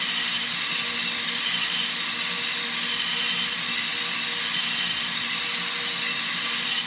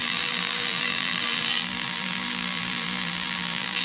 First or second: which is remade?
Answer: second